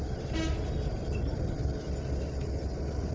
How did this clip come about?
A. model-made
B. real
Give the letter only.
B